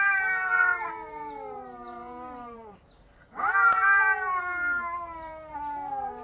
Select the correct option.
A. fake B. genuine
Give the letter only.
A